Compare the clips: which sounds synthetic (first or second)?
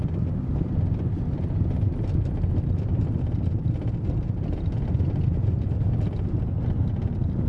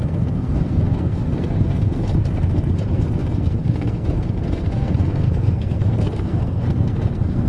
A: second